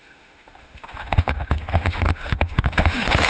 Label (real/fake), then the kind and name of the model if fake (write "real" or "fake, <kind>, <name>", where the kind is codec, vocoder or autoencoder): fake, autoencoder, DAC-VAE